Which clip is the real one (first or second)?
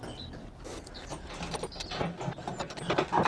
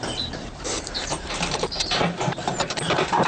first